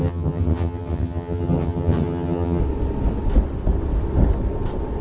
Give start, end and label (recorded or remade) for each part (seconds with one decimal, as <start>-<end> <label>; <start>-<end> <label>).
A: 0.0-2.6 remade; 2.6-5.0 recorded